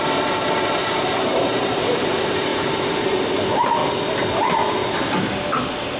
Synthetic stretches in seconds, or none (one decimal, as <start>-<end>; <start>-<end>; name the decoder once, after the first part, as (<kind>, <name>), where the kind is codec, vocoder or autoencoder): 0.8-1.9 (vocoder, BigVGAN v2); 2.5-3.2